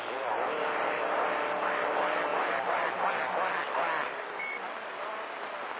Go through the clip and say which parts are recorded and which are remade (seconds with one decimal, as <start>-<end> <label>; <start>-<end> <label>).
0.0-5.8 recorded